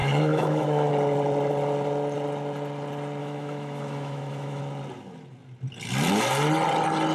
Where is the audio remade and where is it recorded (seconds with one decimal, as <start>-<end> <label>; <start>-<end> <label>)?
0.0-0.9 remade; 0.9-3.2 recorded; 3.2-4.6 remade; 4.6-7.1 recorded